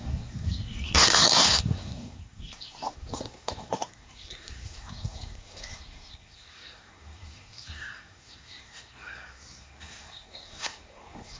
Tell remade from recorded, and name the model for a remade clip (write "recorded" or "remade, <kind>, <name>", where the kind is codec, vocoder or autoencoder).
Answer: remade, codec, SNAC